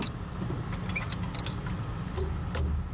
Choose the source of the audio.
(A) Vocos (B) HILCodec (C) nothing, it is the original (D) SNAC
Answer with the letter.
C